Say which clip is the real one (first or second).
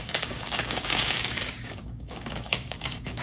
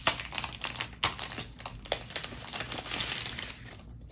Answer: second